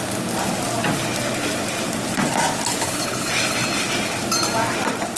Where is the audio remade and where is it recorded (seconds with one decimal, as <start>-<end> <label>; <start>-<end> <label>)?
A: 0.0-2.7 recorded; 2.7-3.3 remade; 3.3-5.2 recorded